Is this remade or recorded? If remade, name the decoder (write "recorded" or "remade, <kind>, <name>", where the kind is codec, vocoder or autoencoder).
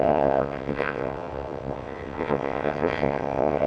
remade, vocoder, WaveNeXt